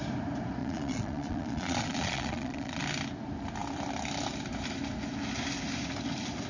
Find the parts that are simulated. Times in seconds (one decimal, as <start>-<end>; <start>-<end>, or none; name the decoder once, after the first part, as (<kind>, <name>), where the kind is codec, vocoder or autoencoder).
0.6-2.8 (vocoder, Vocos)